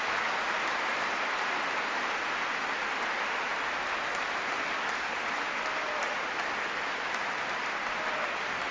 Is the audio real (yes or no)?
yes